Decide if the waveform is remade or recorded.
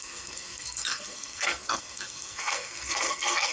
remade